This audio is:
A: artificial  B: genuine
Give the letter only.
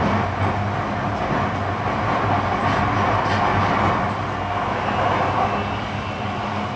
B